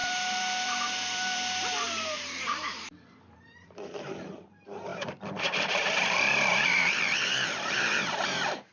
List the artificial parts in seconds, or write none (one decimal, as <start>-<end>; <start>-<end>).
0.0-8.7